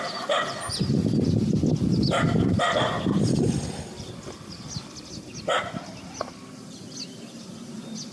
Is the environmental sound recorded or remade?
recorded